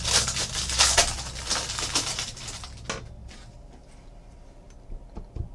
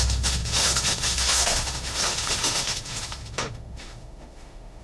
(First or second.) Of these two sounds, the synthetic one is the second